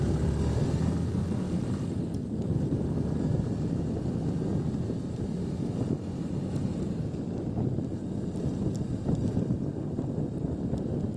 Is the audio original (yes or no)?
yes